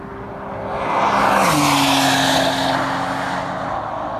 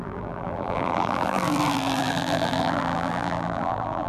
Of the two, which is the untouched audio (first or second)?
first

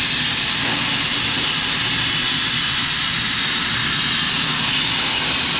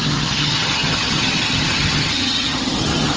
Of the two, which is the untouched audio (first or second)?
first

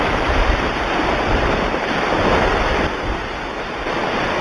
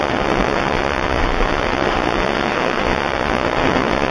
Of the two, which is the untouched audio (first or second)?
first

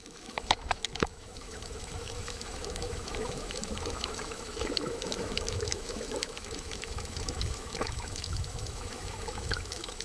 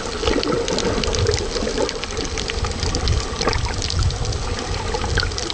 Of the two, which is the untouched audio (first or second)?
second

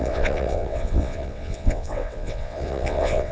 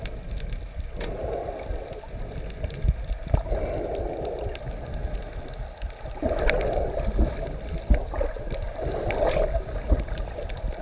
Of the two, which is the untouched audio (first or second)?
second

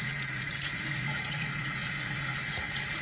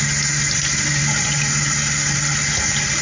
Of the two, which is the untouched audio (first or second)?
second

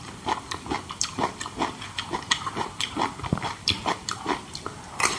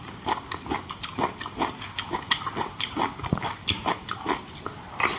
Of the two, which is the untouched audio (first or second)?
second